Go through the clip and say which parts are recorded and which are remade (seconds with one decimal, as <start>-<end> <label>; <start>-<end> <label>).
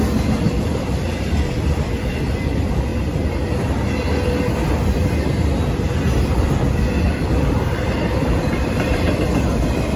0.0-2.9 remade; 2.9-8.1 recorded; 8.1-10.0 remade